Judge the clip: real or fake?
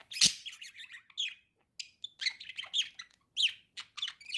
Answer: real